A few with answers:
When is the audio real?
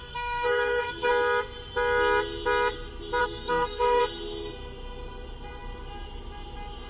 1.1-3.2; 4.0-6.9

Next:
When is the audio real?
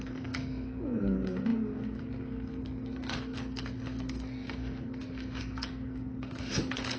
none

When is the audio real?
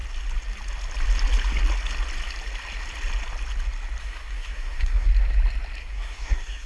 0.0-4.0; 5.1-5.8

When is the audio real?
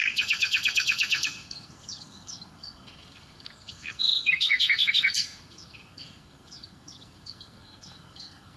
none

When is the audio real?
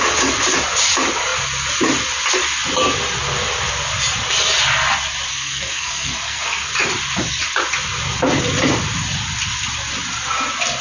0.0-5.3; 6.7-10.8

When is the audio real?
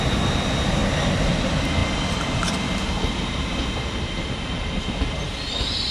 0.0-5.9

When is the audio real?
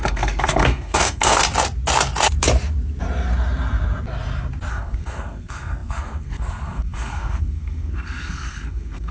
1.4-4.7